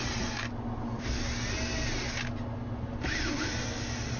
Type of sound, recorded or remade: recorded